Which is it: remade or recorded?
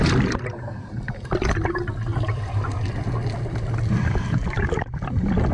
recorded